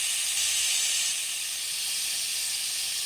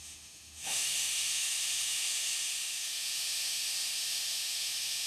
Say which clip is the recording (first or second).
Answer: first